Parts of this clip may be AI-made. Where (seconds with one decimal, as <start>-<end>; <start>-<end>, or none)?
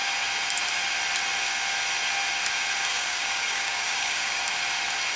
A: 2.9-4.4